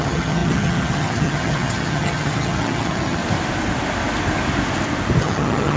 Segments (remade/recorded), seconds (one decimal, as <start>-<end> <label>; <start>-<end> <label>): 0.0-3.2 remade; 3.2-5.2 recorded; 5.2-5.8 remade